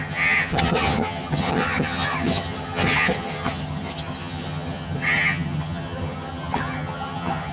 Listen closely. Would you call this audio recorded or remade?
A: remade